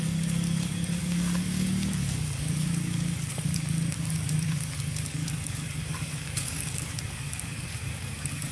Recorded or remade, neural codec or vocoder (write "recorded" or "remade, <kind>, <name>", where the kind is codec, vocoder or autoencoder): remade, codec, DAC